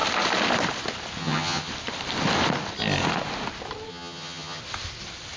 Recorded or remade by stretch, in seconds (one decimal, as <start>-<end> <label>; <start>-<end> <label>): 0.0-1.2 recorded; 1.2-1.7 remade; 1.7-3.9 recorded; 3.9-4.6 remade; 4.6-5.4 recorded